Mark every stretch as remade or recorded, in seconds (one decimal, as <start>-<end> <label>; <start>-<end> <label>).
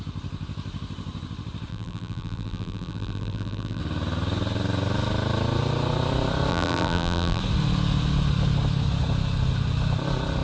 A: 0.0-1.7 recorded; 1.7-3.8 remade; 3.8-6.5 recorded; 6.5-7.4 remade; 7.4-10.4 recorded